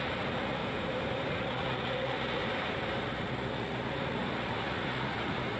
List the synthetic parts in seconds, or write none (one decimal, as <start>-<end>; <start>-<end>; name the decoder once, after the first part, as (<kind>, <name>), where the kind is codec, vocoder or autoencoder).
0.0-0.6 (vocoder, Vocos); 1.3-2.4; 3.0-5.6

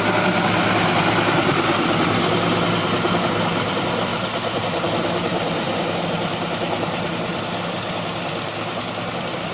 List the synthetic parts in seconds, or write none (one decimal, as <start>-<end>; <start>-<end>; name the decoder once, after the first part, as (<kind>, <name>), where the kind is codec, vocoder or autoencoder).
4.1-7.4 (vocoder, BigVGAN v2)

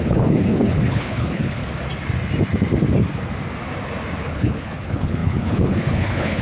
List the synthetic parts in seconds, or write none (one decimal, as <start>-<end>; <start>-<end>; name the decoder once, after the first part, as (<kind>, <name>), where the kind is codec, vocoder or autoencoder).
0.0-1.6 (codec, HILCodec); 4.2-6.4

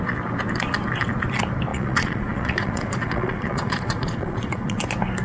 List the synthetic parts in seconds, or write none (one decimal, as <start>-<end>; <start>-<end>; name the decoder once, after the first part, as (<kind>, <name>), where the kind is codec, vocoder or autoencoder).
1.7-4.8 (vocoder, Vocos)

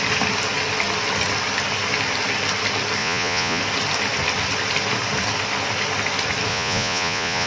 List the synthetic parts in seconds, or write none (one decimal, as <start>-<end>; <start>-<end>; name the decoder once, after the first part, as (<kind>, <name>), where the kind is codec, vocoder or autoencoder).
3.0-3.6 (vocoder, Vocos); 6.5-7.5

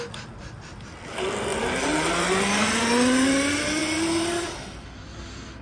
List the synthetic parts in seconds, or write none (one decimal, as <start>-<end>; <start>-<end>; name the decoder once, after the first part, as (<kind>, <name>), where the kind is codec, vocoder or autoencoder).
none

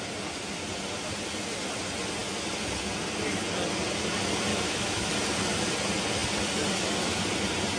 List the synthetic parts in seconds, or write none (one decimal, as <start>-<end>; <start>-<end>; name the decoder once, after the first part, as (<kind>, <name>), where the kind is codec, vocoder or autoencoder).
4.5-5.1 (autoencoder, DAC-VAE)

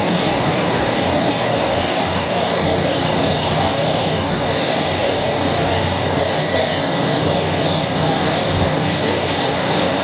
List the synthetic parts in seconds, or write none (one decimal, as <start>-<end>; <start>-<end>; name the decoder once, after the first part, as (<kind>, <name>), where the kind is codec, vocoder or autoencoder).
0.0-10.0 (codec, DAC)